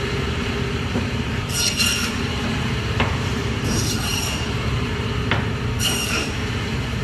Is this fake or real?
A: fake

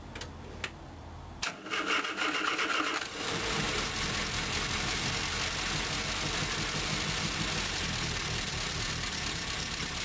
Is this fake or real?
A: real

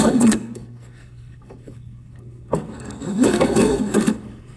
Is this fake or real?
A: fake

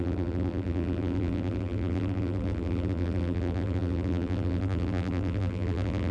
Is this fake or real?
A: fake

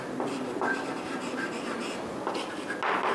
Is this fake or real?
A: real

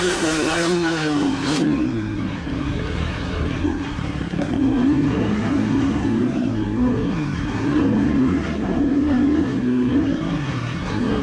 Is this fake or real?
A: fake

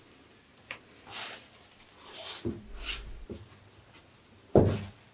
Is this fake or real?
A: real